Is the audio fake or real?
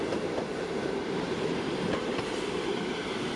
fake